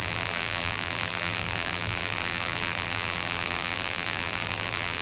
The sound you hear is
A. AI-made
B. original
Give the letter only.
A